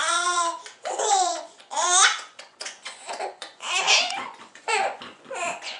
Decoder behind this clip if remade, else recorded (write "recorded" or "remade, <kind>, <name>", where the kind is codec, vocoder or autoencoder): remade, vocoder, Vocos